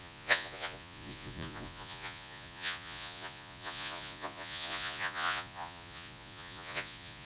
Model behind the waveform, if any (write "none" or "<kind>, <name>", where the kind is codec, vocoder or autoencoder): vocoder, Vocos